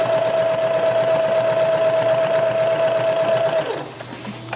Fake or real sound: fake